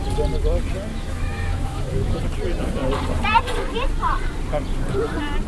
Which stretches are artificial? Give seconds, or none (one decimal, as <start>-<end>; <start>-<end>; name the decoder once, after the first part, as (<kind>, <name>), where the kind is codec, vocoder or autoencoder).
0.9-2.2 (autoencoder, DAC-VAE)

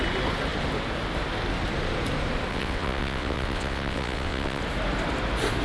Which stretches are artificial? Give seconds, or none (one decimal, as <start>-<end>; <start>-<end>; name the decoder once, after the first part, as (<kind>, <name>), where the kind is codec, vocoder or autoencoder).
2.5-4.6 (vocoder, WaveNeXt)

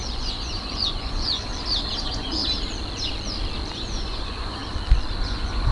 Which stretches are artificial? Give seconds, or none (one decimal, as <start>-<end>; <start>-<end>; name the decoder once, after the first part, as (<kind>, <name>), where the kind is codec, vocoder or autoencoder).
0.0-1.5 (vocoder, Vocos); 2.0-2.4; 3.7-4.6; 5.2-5.7

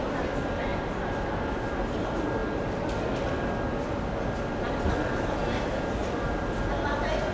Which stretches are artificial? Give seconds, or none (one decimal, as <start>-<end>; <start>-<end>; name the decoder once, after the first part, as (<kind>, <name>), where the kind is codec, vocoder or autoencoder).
6.0-6.7 (vocoder, BigVGAN v2)

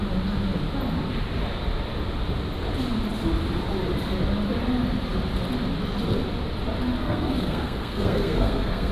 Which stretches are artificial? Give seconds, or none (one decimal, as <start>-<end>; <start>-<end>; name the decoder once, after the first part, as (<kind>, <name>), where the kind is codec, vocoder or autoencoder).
7.0-8.9 (codec, SNAC)

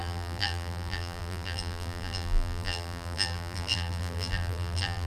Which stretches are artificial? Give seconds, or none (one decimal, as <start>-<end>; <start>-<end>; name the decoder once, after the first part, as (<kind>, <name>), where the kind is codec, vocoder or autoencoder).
0.0-5.1 (vocoder, BigVGAN v2)

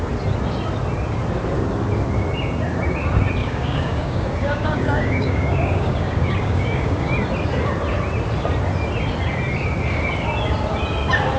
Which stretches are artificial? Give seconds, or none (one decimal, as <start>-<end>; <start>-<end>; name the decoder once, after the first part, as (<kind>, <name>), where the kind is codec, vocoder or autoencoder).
3.4-7.1 (codec, DAC)

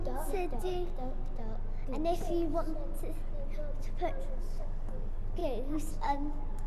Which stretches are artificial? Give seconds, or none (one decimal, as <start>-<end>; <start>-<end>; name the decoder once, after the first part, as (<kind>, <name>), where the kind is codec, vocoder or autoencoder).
0.0-1.4 (codec, DAC); 4.4-5.4; 5.9-6.7